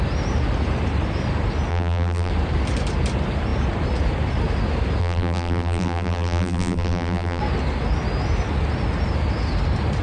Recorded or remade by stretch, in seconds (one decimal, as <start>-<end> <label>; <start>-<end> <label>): 0.0-1.7 recorded; 1.7-2.3 remade; 2.3-5.0 recorded; 5.0-7.4 remade; 7.4-10.0 recorded